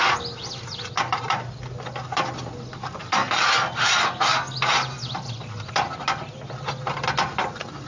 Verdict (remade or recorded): recorded